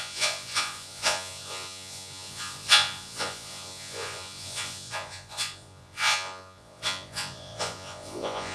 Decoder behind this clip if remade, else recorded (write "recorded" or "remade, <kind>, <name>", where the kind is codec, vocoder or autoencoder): remade, vocoder, Vocos